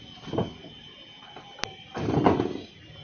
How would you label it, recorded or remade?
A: recorded